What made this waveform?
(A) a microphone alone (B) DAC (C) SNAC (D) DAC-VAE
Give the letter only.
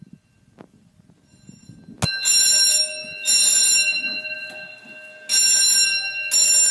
A